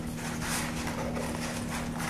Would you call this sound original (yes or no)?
yes